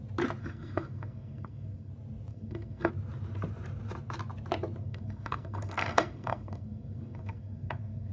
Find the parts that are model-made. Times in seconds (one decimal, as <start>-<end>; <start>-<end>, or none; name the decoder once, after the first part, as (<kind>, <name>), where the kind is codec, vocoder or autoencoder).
0.4-1.9 (codec, SNAC); 2.3-2.9; 4.8-8.1